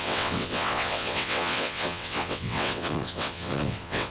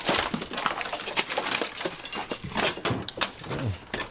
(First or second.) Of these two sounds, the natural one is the second